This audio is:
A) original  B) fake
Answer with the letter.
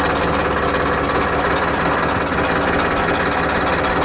A